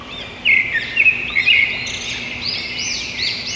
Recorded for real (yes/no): yes